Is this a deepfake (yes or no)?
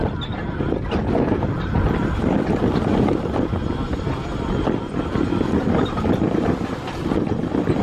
no